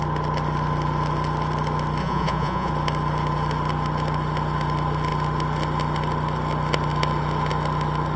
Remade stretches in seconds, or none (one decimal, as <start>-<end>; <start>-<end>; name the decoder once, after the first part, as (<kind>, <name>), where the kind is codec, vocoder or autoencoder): 2.0-2.7 (vocoder, Vocos)